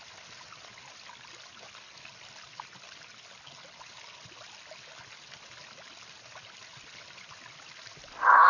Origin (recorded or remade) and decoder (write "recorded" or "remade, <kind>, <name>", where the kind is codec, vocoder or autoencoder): recorded